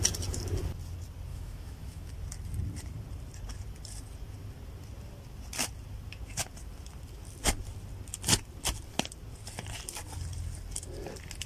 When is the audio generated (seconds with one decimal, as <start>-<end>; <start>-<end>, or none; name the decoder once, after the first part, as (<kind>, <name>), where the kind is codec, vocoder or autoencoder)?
1.3-2.1 (autoencoder, DAC-VAE)